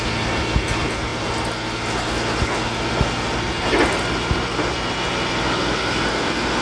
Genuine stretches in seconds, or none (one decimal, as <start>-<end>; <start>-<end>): 0.0-6.6